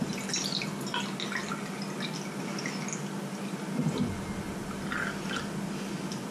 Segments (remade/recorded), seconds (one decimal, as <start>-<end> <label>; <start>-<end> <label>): 0.0-6.3 recorded